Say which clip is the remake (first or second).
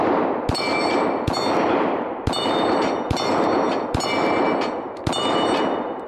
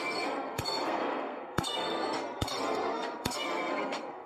second